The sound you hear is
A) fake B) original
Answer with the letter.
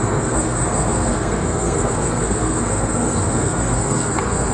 A